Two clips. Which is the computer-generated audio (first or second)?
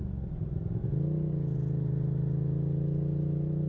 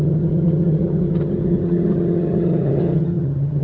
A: second